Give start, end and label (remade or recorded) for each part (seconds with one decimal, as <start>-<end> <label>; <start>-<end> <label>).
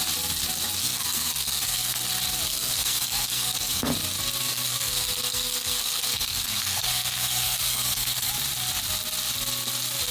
0.0-0.8 recorded; 0.8-2.0 remade; 2.0-2.5 recorded; 2.5-3.9 remade; 3.9-4.4 recorded; 4.4-8.3 remade; 8.3-10.1 recorded